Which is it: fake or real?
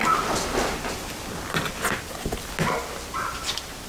real